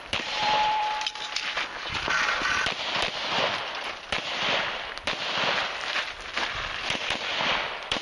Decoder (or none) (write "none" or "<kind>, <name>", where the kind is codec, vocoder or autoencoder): vocoder, BigVGAN v2